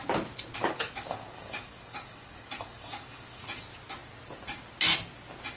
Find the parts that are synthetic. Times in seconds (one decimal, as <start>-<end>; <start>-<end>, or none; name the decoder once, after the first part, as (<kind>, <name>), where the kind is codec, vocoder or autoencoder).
0.6-3.4 (codec, DAC)